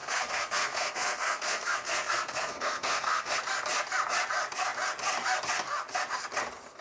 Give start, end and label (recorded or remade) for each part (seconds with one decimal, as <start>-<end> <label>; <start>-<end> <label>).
0.0-3.4 remade; 3.4-6.8 recorded